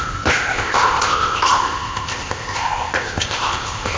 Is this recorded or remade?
remade